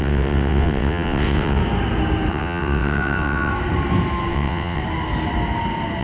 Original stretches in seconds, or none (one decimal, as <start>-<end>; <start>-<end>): 1.6-2.3; 3.5-4.3; 4.8-6.0